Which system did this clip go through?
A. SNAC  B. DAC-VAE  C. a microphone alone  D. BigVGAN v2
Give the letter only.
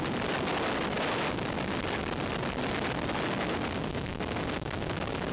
C